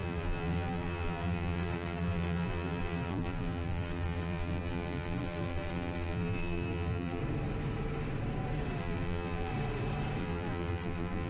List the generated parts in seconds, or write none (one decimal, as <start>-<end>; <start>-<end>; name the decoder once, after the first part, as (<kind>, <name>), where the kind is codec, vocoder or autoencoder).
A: 0.0-7.2 (vocoder, BigVGAN v2); 8.8-9.5; 10.2-11.3